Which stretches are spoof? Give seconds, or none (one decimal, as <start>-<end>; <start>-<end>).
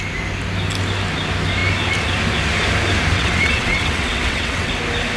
3.1-4.7